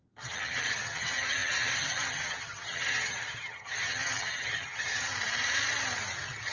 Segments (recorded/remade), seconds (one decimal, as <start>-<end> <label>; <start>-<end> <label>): 0.0-5.1 remade; 5.1-6.5 recorded